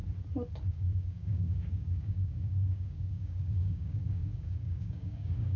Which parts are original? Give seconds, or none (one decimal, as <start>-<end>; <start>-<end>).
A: 0.0-0.7